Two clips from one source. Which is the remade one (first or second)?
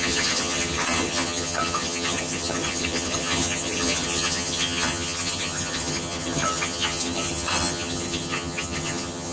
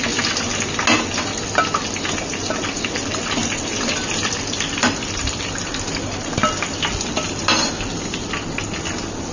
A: first